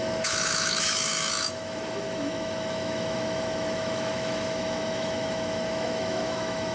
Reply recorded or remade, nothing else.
remade